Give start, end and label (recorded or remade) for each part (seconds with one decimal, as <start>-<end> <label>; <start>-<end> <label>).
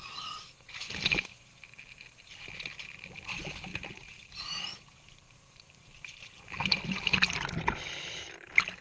0.0-3.7 recorded; 3.7-6.2 remade; 6.2-8.8 recorded